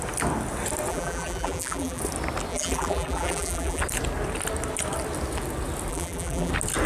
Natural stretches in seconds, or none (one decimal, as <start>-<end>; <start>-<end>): 0.0-0.9; 2.0-2.5; 3.8-5.9; 6.5-6.9